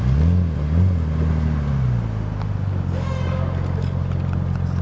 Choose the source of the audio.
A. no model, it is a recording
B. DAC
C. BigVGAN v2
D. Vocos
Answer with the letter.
A